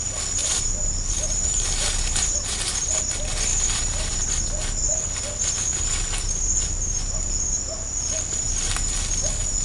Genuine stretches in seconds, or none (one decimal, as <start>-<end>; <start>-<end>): 0.0-0.4; 3.0-3.5; 4.3-9.6